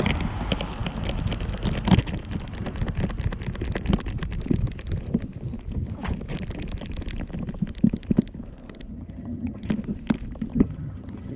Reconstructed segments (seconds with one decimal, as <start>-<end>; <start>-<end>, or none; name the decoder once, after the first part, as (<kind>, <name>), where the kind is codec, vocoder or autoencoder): 8.9-9.7 (vocoder, HiFi-GAN); 10.5-11.4